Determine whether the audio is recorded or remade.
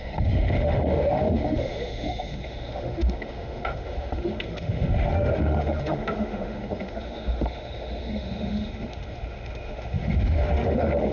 remade